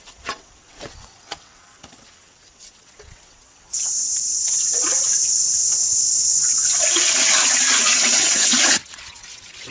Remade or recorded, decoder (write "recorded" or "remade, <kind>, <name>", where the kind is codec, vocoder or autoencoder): remade, vocoder, WaveNeXt